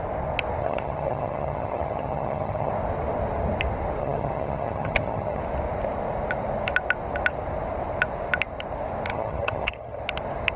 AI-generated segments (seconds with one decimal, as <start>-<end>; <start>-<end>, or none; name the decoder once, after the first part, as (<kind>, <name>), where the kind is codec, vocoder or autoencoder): 0.6-2.7 (vocoder, HiFi-GAN); 4.0-5.4; 9.1-10.0